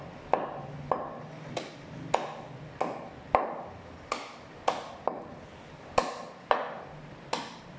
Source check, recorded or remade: recorded